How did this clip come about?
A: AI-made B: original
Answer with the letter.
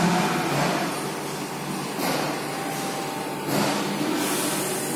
B